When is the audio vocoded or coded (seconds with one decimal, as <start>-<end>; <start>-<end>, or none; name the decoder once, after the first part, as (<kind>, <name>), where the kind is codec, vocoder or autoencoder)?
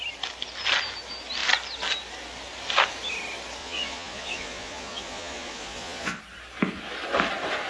3.6-6.2 (vocoder, Vocos)